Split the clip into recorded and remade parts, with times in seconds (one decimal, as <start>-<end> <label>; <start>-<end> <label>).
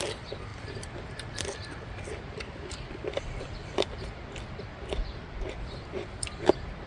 0.0-6.9 remade